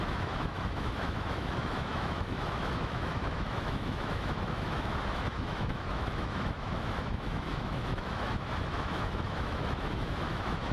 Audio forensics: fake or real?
fake